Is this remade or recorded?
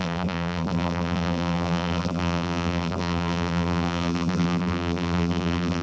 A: remade